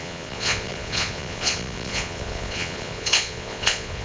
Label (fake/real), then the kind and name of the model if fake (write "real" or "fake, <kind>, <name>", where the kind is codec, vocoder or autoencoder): fake, vocoder, Vocos